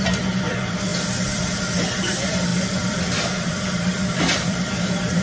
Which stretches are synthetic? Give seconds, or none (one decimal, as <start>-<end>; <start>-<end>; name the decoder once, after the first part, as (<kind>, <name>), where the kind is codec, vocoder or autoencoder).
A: 2.5-5.2 (vocoder, BigVGAN v2)